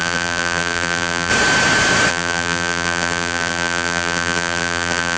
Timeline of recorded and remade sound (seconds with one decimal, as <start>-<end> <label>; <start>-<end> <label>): 0.0-1.3 remade; 1.3-2.1 recorded; 2.1-5.2 remade